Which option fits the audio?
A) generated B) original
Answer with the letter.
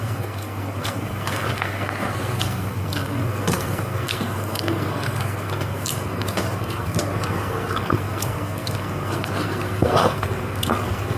A